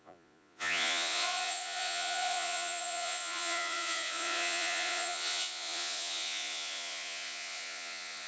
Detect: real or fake fake